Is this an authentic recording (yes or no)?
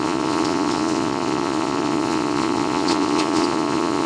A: no